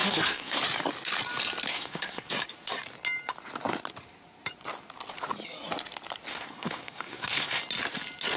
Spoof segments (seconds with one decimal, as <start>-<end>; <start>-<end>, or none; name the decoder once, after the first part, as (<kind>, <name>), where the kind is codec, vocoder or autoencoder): 0.0-0.6 (codec, SNAC); 1.7-2.3; 6.3-7.6